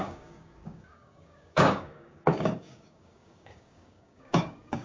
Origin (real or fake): fake